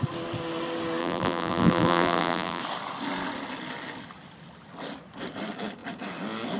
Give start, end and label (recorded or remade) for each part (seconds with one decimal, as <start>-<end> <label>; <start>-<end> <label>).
0.0-1.0 recorded; 1.0-2.6 remade; 2.6-6.6 recorded